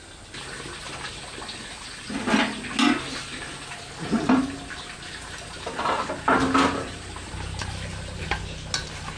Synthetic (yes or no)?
no